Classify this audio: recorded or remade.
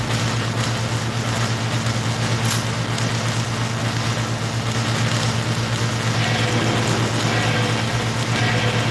recorded